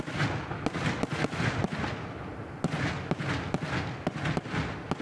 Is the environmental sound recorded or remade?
recorded